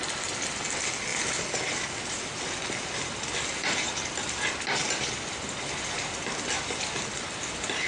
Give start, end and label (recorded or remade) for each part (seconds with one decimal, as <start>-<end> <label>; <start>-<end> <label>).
0.0-7.9 recorded